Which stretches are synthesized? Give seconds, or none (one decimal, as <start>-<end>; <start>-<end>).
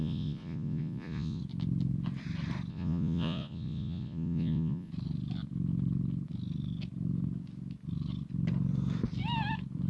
0.0-1.4; 2.7-4.9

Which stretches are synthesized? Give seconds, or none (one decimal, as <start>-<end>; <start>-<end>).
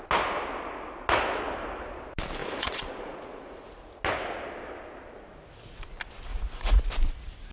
2.4-3.9; 6.3-6.8